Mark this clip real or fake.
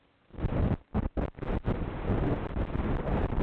real